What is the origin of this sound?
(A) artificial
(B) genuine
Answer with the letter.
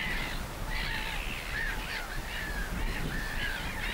B